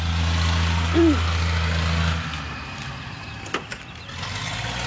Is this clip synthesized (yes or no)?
no